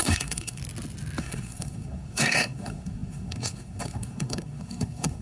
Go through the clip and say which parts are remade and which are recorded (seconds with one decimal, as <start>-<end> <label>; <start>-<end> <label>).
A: 0.0-0.6 remade; 0.6-1.2 recorded; 1.2-5.2 remade